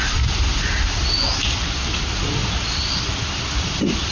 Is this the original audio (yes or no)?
yes